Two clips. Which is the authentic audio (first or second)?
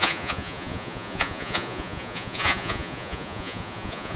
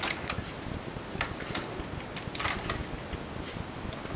second